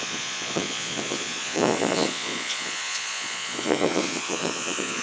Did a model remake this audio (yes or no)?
yes